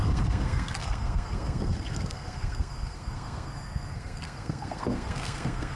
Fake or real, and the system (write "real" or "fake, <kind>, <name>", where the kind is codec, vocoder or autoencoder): fake, codec, SNAC